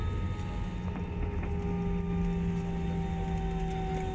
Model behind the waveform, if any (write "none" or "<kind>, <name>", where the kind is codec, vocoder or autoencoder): none